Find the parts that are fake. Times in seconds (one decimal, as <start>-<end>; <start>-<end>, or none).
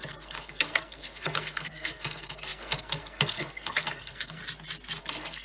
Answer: 0.0-4.4; 5.0-5.4